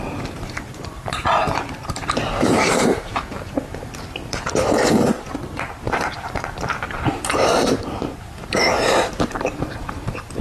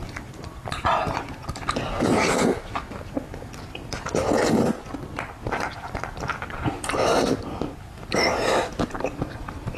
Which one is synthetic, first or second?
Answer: first